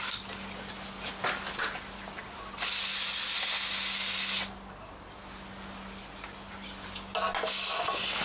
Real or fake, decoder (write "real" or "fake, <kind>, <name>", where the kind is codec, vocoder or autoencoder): real